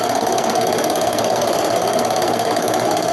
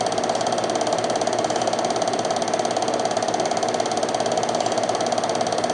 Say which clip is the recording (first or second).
second